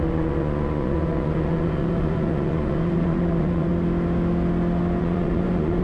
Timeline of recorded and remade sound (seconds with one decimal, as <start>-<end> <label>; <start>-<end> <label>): 0.0-3.7 remade; 3.7-5.0 recorded; 5.0-5.8 remade